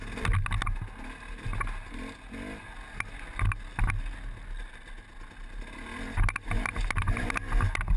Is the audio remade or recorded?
recorded